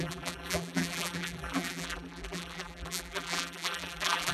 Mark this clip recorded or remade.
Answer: remade